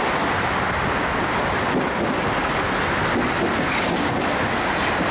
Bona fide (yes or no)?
yes